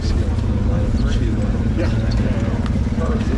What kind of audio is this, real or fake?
real